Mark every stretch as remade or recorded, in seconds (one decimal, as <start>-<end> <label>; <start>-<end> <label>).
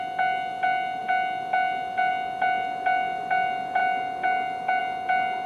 0.0-5.5 recorded